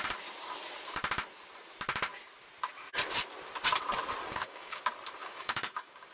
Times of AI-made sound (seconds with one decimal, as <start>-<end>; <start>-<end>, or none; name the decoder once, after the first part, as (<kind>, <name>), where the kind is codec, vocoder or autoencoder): 4.2-4.8 (codec, DAC); 5.2-6.1